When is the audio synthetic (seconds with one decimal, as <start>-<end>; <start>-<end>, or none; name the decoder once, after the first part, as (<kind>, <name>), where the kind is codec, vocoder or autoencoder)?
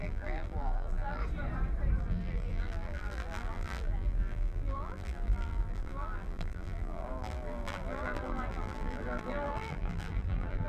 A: 0.0-1.2 (vocoder, BigVGAN v2); 2.0-10.7